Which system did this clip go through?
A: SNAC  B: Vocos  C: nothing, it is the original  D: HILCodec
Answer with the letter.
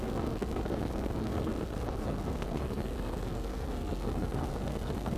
A